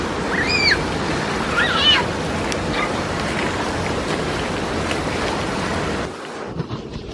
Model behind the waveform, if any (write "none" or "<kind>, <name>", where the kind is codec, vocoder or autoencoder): none